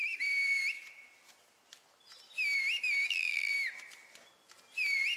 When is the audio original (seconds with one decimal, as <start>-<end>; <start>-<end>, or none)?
0.0-3.1; 3.5-5.2